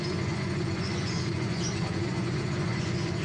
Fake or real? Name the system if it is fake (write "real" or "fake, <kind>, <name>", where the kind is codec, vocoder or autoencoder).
fake, vocoder, Vocos